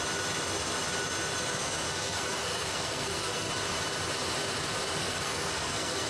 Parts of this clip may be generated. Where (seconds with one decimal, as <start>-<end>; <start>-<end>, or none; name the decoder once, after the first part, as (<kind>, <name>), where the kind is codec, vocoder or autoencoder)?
1.5-3.5 (codec, SNAC); 5.0-6.1